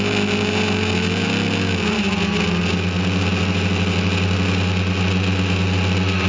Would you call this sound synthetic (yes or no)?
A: no